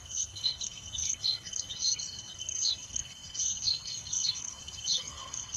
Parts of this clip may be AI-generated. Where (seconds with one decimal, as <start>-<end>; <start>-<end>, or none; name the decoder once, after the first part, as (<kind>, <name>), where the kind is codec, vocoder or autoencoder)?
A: 0.0-5.6 (codec, SNAC)